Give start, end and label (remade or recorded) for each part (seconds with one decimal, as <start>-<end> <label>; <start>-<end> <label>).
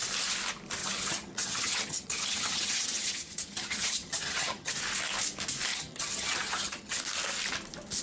0.0-0.8 recorded; 0.8-4.7 remade; 4.7-5.7 recorded; 5.7-7.0 remade; 7.0-8.0 recorded